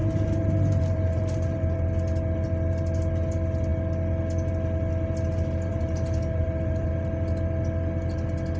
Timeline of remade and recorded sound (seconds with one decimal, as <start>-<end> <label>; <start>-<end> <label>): 0.0-1.8 remade; 1.8-5.7 recorded; 5.7-6.9 remade; 6.9-8.6 recorded